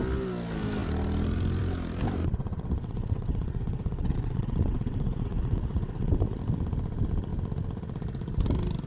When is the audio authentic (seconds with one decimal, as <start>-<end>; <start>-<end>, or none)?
0.0-2.2; 6.4-8.9